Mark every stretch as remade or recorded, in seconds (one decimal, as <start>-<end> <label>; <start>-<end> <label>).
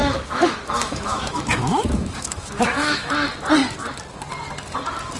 0.0-3.1 remade; 3.1-5.2 recorded